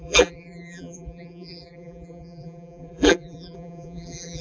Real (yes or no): no